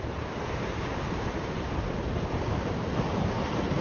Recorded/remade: remade